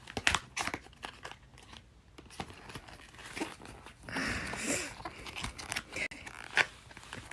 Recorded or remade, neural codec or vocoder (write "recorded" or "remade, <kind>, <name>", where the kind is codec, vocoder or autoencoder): recorded